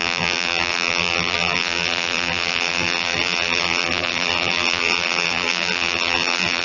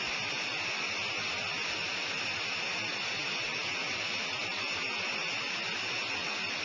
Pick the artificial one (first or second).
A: first